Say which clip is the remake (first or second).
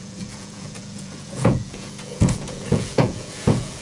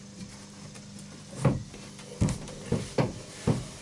first